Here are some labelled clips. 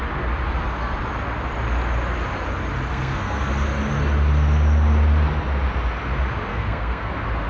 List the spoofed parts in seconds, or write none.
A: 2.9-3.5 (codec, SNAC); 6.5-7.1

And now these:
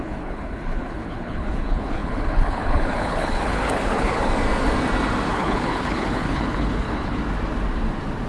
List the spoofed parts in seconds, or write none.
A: 0.0-4.3 (codec, HILCodec); 5.3-7.2

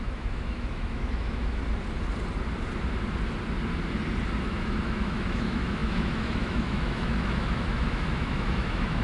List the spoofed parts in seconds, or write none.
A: 0.0-1.6 (autoencoder, DAC-VAE); 4.4-9.0

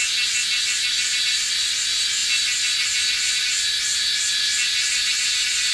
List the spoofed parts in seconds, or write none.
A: none

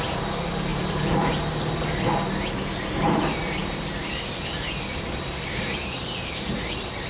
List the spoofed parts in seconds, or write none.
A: 0.7-1.5 (vocoder, BigVGAN v2); 3.6-5.8

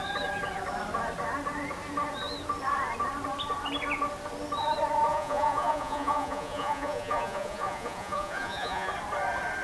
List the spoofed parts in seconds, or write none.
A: 5.1-8.9 (vocoder, Vocos)

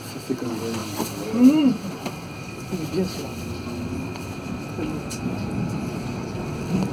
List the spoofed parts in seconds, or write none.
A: none